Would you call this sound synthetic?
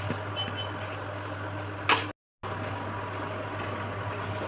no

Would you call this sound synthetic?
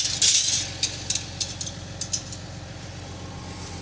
no